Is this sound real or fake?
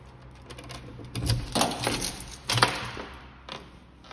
real